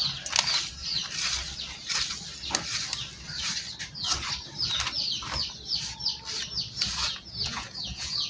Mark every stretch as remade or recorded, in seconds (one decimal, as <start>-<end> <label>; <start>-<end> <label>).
0.0-7.0 recorded; 7.0-8.3 remade